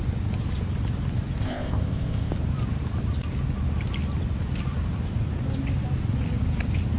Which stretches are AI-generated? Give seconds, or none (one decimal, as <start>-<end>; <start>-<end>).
1.4-2.3